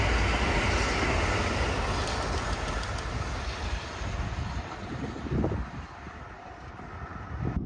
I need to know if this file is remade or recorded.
recorded